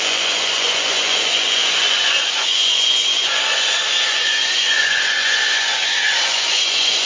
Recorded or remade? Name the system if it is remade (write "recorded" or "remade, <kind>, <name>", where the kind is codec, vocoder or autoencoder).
remade, vocoder, Vocos